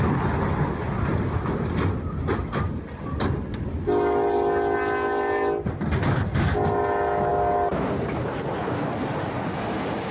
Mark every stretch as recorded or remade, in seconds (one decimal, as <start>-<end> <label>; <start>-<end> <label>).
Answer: 0.0-10.1 recorded